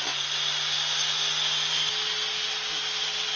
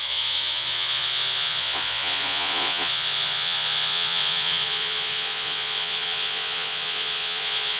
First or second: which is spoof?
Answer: second